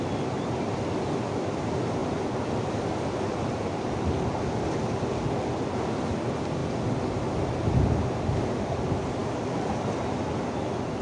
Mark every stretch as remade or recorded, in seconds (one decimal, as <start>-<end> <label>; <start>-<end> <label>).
0.0-11.0 recorded